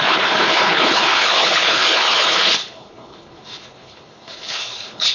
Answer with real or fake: fake